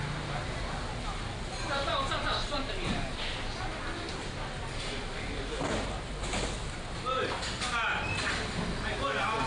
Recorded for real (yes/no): yes